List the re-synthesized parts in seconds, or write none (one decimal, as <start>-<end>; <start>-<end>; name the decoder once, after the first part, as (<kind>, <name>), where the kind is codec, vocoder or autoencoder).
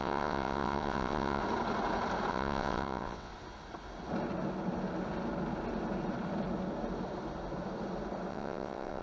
0.0-1.4 (vocoder, WaveNeXt); 2.3-3.3; 8.3-9.0